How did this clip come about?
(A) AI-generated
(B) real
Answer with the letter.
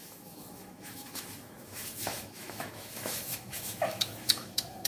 A